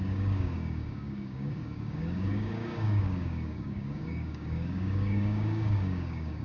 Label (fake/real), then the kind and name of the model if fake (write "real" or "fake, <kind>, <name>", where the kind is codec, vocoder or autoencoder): fake, codec, DAC